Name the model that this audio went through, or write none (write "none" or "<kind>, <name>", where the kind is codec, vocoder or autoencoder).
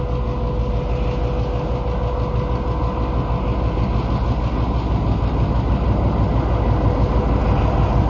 none